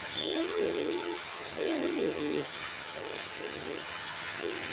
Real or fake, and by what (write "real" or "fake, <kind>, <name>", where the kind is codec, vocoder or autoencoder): fake, vocoder, HiFi-GAN